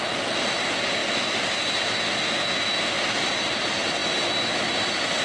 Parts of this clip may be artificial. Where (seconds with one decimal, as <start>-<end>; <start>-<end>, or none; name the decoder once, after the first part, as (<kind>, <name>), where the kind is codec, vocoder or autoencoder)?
none